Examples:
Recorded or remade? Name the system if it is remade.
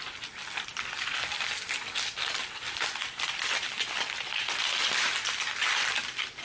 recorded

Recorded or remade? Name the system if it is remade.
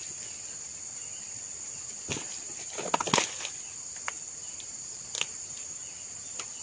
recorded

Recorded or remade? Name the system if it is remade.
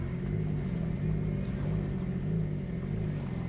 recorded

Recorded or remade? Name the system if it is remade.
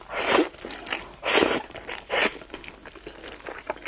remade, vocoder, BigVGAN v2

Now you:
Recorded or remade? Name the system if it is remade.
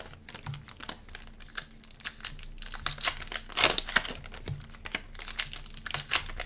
recorded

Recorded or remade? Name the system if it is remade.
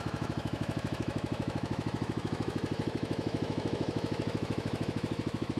remade, autoencoder, DAC-VAE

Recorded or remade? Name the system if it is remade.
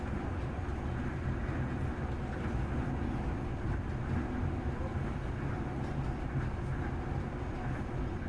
recorded